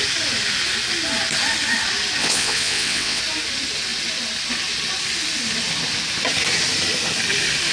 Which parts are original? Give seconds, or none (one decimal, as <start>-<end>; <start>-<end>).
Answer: 0.0-2.2; 3.2-7.7